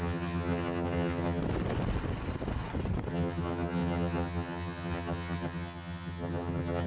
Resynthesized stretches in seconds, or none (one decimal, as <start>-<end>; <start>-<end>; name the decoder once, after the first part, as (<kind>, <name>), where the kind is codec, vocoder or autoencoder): 0.0-1.4 (vocoder, HiFi-GAN); 3.1-6.9